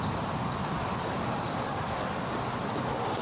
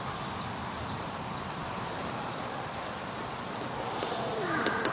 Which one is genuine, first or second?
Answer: first